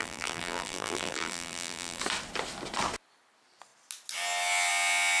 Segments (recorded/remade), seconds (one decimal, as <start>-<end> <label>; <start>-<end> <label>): 0.0-2.0 remade; 2.0-5.2 recorded